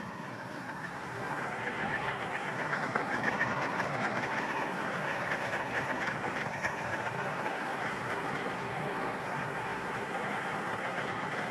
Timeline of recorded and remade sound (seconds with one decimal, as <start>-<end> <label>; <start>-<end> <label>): 0.0-11.5 remade